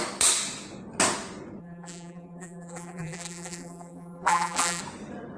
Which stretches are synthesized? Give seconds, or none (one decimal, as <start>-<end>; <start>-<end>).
1.6-4.8